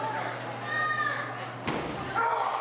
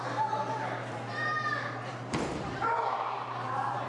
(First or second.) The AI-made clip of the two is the second